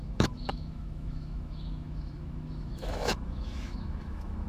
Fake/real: fake